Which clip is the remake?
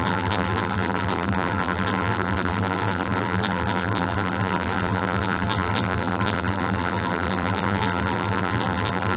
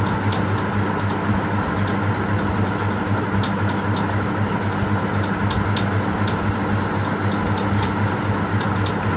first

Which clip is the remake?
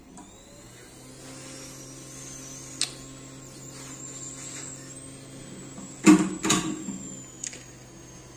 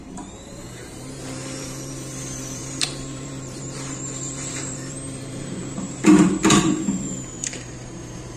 second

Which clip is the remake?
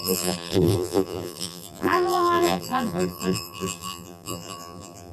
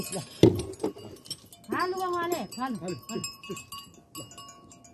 first